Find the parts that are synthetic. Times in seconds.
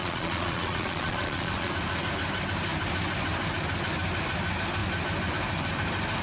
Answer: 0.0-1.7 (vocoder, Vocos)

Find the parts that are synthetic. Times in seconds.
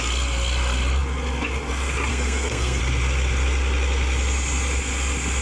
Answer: 2.1-2.8 (codec, SNAC)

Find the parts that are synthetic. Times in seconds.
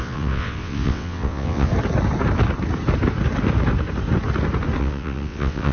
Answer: 0.0-1.7 (vocoder, WaveNeXt); 4.8-5.7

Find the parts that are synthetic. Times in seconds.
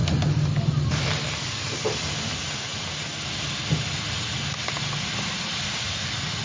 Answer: none